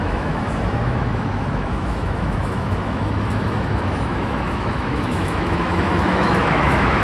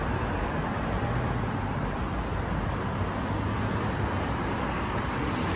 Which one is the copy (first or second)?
first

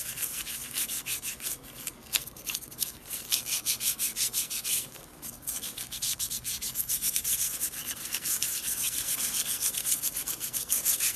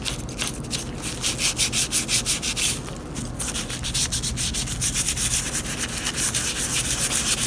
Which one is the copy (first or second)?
first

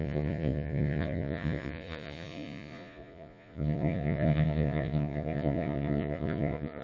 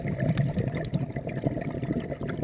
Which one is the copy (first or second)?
first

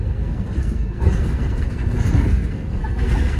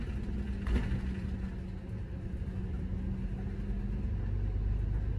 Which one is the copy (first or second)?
first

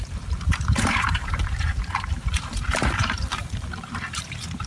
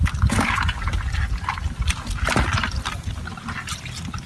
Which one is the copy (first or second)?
first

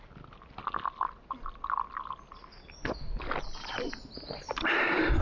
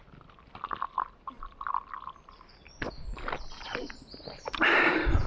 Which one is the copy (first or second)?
second